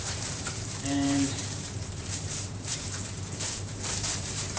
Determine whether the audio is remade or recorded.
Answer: remade